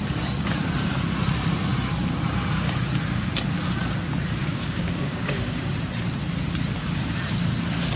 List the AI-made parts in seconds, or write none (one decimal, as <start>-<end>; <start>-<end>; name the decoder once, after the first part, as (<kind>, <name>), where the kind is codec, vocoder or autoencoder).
4.4-5.6 (codec, DAC)